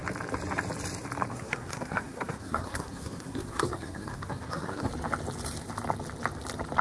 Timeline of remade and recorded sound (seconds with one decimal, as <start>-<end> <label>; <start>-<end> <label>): 0.0-1.3 recorded; 1.3-4.9 remade; 4.9-6.8 recorded